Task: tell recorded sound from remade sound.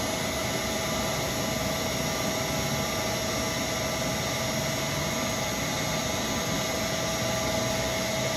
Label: recorded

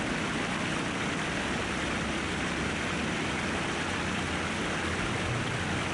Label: recorded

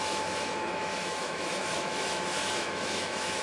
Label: remade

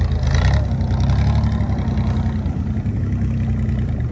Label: recorded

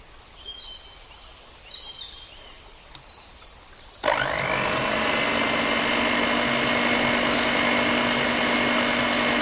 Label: recorded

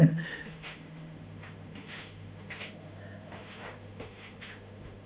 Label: remade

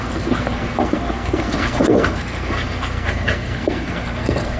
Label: remade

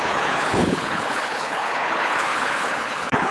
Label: remade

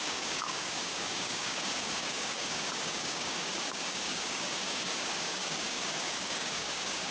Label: remade